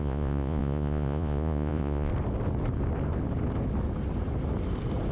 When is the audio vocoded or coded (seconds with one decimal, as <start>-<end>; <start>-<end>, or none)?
0.0-2.1